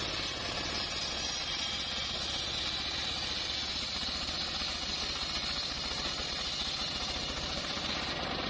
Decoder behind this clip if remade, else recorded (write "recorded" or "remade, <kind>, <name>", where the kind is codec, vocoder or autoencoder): recorded